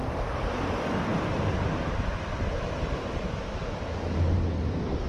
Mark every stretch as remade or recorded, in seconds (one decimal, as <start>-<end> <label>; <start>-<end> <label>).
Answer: 0.0-1.1 recorded; 1.1-1.9 remade; 1.9-3.6 recorded; 3.6-4.4 remade; 4.4-5.1 recorded